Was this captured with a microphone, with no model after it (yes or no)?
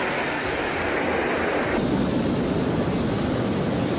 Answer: yes